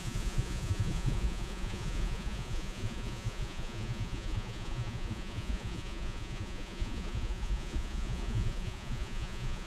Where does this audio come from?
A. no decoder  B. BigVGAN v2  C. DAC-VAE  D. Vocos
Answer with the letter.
D